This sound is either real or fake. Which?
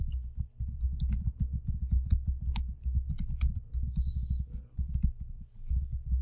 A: real